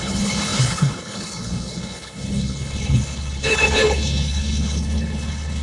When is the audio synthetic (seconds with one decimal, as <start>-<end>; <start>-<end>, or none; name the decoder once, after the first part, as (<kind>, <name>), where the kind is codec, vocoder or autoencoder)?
0.0-5.6 (codec, HILCodec)